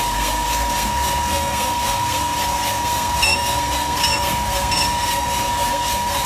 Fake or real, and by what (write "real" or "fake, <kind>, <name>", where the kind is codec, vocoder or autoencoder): fake, codec, SNAC